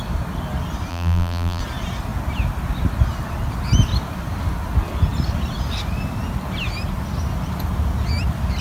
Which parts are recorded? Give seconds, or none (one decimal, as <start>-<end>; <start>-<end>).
0.0-0.9; 1.6-8.6